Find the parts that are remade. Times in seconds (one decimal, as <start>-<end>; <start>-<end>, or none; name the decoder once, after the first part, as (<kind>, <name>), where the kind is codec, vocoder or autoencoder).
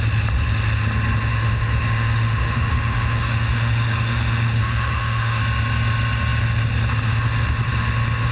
1.3-5.4 (autoencoder, DAC-VAE)